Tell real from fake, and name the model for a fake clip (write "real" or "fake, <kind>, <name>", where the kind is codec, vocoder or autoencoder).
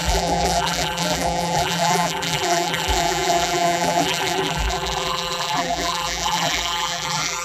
fake, vocoder, BigVGAN v2